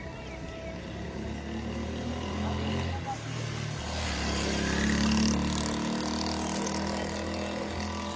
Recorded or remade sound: recorded